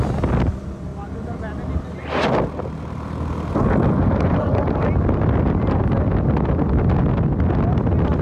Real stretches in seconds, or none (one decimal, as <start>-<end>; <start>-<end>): 0.0-8.2